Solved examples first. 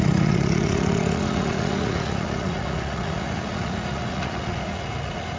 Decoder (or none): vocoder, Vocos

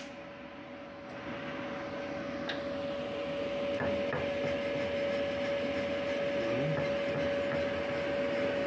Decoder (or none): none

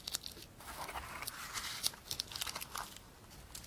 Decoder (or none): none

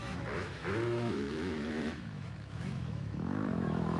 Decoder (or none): autoencoder, DAC-VAE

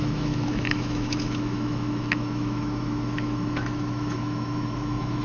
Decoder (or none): autoencoder, DAC-VAE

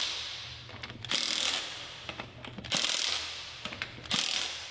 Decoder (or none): none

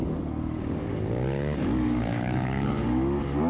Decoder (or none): codec, DAC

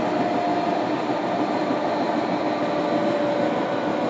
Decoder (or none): none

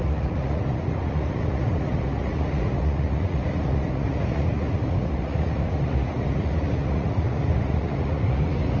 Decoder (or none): vocoder, Vocos